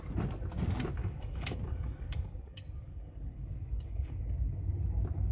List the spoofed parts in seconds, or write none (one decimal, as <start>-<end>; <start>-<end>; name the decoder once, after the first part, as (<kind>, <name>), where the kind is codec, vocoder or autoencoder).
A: 1.0-4.2 (codec, DAC)

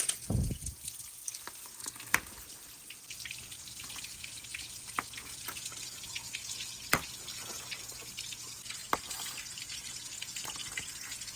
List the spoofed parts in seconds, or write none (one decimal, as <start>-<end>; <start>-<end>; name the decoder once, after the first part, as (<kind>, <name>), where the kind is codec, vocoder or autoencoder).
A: 0.0-1.2 (vocoder, Vocos); 3.4-8.8; 9.7-11.4

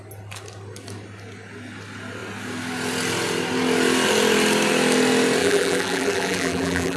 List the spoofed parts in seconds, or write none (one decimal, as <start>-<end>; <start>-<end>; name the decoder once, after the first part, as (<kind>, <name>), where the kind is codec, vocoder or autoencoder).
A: 5.4-7.0 (vocoder, BigVGAN v2)

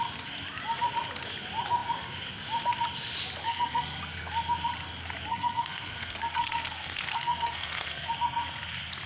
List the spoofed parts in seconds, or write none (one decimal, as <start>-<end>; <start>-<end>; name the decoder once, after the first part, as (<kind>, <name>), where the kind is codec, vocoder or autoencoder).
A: 3.4-4.0 (codec, SNAC); 5.3-8.1

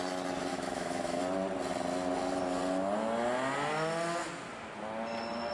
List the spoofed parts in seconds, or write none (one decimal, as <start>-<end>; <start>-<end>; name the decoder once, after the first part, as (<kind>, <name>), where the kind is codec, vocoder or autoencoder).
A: 0.5-1.2 (autoencoder, DAC-VAE)

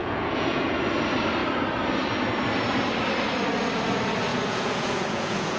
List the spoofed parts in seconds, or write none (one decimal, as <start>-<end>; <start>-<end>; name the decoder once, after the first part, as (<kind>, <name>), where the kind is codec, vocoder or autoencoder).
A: 0.0-0.8 (vocoder, Vocos); 4.3-5.6